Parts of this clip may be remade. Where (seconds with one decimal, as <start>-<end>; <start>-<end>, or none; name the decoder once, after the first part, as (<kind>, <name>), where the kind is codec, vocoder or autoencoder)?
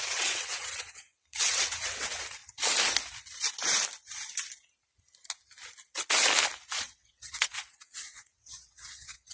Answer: 0.0-2.4 (vocoder, WaveNeXt); 6.8-9.3